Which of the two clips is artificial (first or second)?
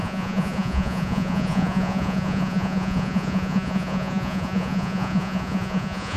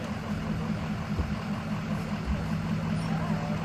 first